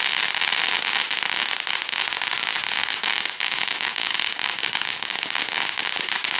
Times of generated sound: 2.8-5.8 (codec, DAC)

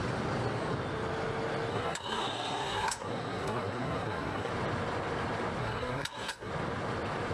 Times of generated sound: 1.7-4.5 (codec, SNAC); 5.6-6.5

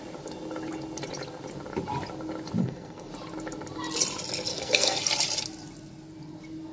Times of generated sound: 2.6-3.1 (codec, SNAC); 4.5-5.0

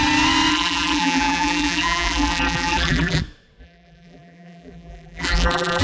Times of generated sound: 0.5-3.2 (vocoder, BigVGAN v2); 3.6-5.8

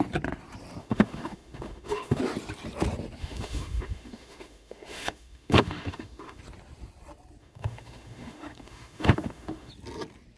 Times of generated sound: 0.8-2.2 (autoencoder, DAC-VAE); 3.2-6.4; 7.4-9.7

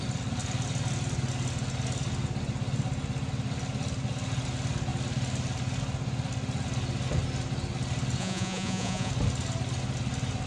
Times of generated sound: 8.2-9.1 (vocoder, Vocos)

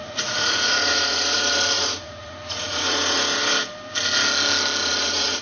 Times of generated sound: 0.0-3.2 (vocoder, Vocos); 4.8-5.4

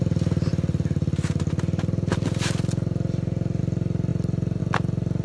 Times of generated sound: none